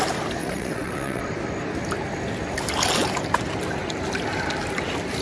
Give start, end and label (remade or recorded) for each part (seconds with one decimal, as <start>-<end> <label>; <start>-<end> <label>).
0.0-0.4 recorded; 0.4-1.2 remade; 1.2-5.2 recorded

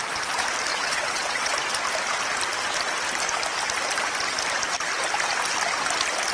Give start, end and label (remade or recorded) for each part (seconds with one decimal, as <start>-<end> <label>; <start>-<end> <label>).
0.0-0.7 recorded; 0.7-1.5 remade; 1.5-6.3 recorded

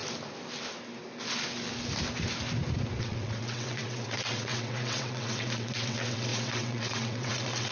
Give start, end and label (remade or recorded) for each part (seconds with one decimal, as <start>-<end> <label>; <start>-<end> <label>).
0.0-3.0 recorded; 3.0-7.7 remade

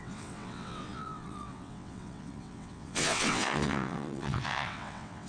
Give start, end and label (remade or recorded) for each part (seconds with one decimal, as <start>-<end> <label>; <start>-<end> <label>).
0.0-5.3 remade

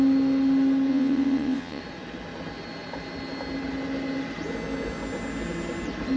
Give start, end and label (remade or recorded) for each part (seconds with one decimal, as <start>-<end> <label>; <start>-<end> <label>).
0.0-0.9 recorded; 0.9-1.8 remade; 1.8-6.2 recorded

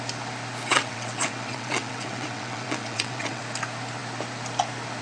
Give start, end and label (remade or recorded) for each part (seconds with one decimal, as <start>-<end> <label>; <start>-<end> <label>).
0.0-0.7 recorded; 0.7-3.4 remade; 3.4-5.0 recorded

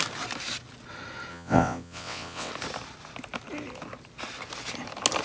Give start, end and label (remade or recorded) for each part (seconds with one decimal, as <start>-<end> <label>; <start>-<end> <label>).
0.0-1.3 recorded; 1.3-2.5 remade; 2.5-5.2 recorded

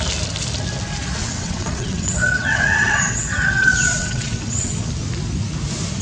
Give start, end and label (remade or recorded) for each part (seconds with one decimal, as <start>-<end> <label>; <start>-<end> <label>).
0.0-1.2 recorded; 1.2-4.8 remade; 4.8-6.0 recorded